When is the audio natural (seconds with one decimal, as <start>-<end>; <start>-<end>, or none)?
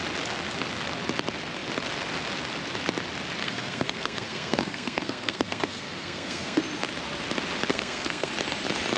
0.0-3.4; 6.6-7.7; 8.3-9.0